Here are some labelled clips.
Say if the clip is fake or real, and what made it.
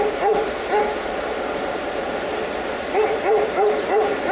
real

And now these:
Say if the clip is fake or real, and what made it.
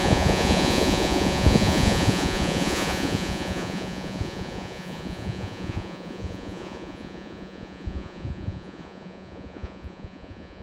fake, vocoder, Vocos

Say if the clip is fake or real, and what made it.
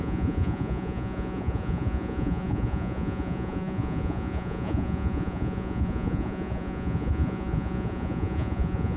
fake, vocoder, Vocos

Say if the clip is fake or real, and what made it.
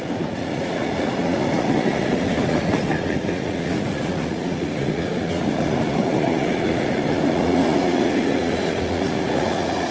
fake, vocoder, Vocos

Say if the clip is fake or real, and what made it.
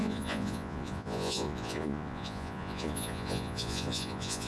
fake, vocoder, Vocos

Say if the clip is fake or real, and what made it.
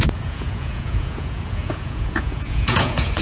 fake, vocoder, Vocos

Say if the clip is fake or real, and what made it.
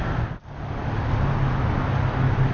real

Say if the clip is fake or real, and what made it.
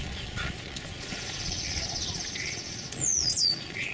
fake, vocoder, Vocos